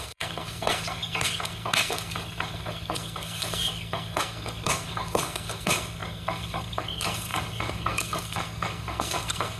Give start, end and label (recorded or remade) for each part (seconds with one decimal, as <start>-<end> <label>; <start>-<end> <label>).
0.0-9.6 remade